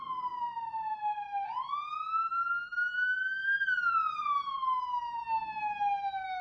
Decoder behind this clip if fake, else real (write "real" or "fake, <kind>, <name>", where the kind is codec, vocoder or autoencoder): real